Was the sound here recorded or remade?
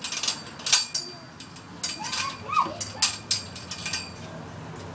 recorded